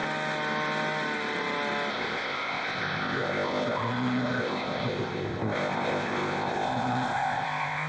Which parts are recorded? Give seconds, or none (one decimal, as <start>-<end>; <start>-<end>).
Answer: 0.0-1.9